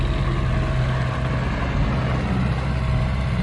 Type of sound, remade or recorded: recorded